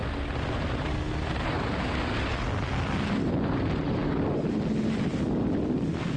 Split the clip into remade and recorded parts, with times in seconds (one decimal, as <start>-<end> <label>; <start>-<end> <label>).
0.0-6.2 recorded